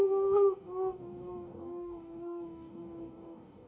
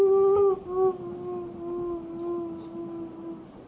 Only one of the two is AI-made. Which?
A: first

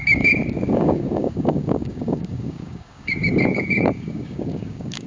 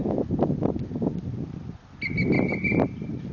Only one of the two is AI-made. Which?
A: first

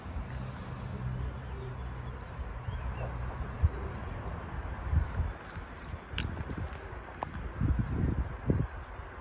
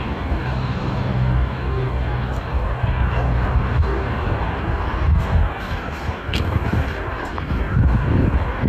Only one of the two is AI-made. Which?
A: second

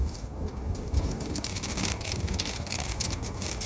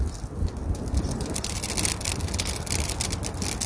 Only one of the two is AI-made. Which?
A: first